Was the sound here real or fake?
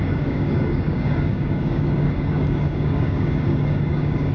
fake